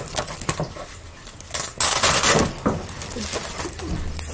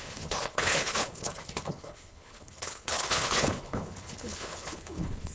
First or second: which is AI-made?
second